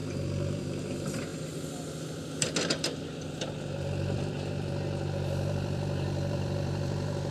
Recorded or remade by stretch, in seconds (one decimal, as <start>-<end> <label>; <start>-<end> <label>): 0.0-7.3 remade